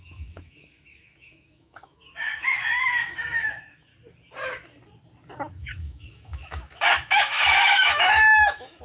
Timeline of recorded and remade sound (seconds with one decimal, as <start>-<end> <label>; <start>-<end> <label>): 0.0-3.9 remade; 3.9-5.5 recorded; 5.5-8.8 remade